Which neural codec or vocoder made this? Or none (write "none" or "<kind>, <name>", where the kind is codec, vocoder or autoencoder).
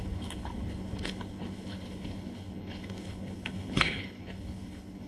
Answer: codec, HILCodec